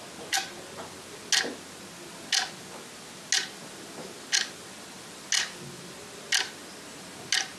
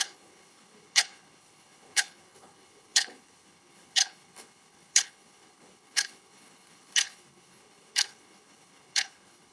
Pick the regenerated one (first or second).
second